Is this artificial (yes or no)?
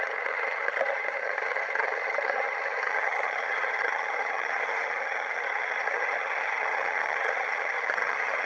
yes